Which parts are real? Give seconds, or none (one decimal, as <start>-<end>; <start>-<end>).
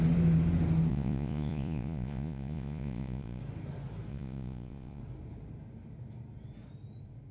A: 0.0-0.9; 3.4-4.1; 5.0-7.3